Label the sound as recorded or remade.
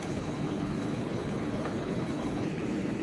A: remade